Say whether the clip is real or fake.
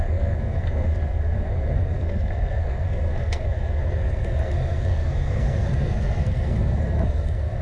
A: fake